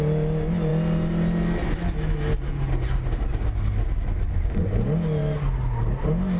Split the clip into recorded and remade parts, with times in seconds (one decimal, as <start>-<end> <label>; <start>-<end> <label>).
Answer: 0.0-6.4 recorded

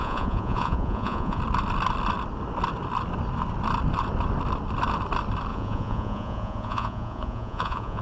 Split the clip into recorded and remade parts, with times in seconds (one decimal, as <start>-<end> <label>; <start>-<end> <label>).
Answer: 0.0-1.4 remade; 1.4-5.5 recorded; 5.5-8.0 remade

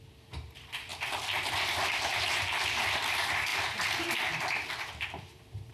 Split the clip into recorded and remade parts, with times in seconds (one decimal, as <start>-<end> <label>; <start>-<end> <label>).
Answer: 0.0-5.7 recorded

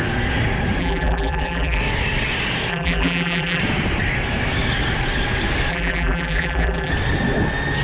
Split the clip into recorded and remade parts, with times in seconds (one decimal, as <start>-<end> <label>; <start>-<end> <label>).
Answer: 0.0-0.8 recorded; 0.8-1.8 remade; 1.8-2.7 recorded; 2.7-3.6 remade; 3.6-5.7 recorded; 5.7-6.9 remade; 6.9-7.8 recorded

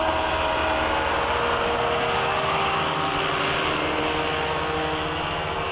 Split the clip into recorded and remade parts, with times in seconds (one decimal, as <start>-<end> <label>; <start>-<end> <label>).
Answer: 0.0-5.7 recorded

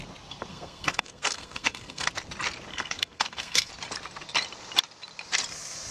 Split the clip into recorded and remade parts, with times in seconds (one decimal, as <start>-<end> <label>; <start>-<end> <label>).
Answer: 0.0-0.5 recorded; 0.5-2.1 remade; 2.1-2.7 recorded; 2.7-3.7 remade; 3.7-5.9 recorded

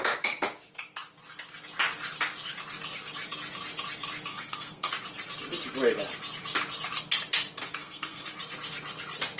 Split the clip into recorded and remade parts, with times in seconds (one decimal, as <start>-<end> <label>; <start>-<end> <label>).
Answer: 0.0-4.3 recorded; 4.3-4.9 remade; 4.9-7.8 recorded; 7.8-8.3 remade; 8.3-9.4 recorded